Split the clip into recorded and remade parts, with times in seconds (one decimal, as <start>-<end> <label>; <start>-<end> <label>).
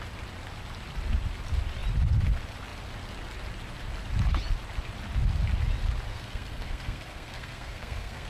0.0-6.1 recorded; 6.1-8.3 remade